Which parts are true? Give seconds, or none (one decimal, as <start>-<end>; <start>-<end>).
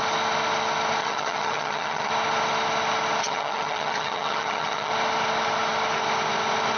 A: 0.0-1.0; 2.1-3.2; 4.9-6.8